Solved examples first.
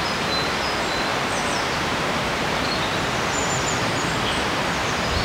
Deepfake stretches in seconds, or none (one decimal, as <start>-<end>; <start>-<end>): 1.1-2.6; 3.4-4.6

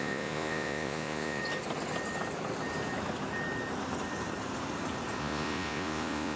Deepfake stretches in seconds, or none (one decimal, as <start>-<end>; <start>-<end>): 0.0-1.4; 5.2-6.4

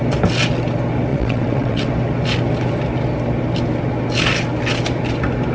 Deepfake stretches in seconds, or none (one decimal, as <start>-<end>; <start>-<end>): 1.1-1.9